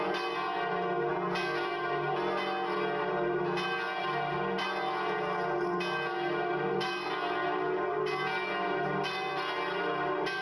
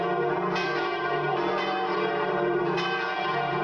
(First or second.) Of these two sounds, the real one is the first